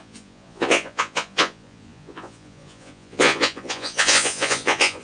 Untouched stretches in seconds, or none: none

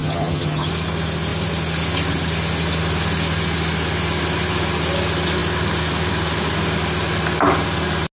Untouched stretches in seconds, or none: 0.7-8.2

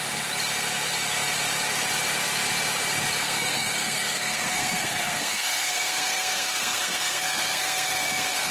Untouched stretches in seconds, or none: 0.0-3.2

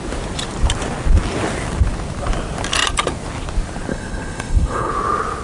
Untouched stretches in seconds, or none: 0.0-3.9; 4.9-5.4

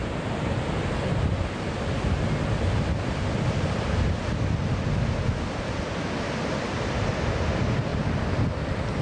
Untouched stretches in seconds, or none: 0.0-9.0